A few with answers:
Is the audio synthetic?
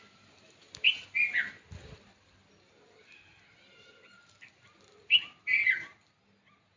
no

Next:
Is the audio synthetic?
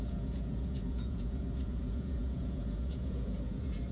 yes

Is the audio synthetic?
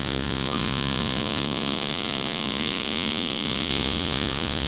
yes